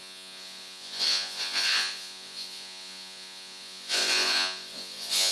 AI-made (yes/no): yes